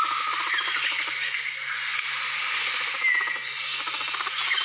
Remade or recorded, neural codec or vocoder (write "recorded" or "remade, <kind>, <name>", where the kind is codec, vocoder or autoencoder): recorded